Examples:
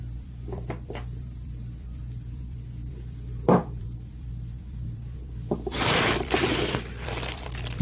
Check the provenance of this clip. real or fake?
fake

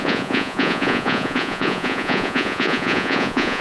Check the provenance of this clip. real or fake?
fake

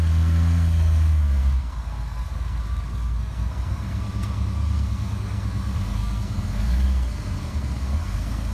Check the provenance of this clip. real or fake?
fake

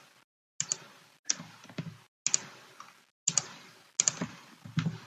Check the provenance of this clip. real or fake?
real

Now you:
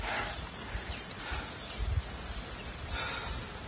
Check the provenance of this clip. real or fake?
real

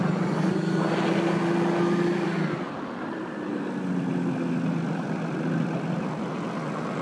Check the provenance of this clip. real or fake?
real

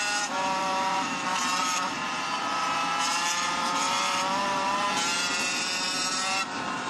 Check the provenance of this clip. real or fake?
fake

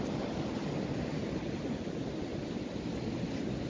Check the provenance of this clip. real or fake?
real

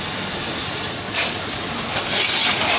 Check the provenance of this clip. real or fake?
real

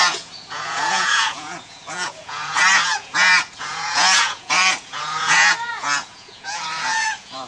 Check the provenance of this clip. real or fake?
fake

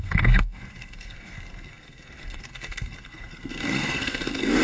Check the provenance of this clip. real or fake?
fake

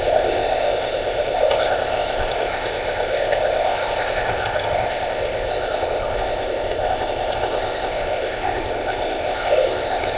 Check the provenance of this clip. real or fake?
fake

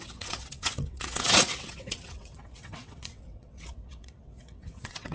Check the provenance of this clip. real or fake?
fake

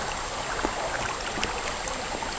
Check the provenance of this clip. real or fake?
real